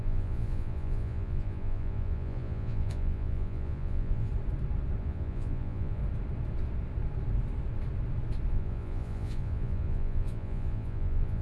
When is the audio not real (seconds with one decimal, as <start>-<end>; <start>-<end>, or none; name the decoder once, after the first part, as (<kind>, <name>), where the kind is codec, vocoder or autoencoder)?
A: 0.0-4.3 (vocoder, Vocos); 5.0-6.0; 8.5-11.4